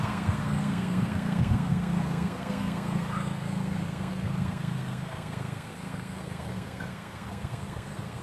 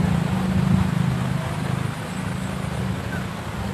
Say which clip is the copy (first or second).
first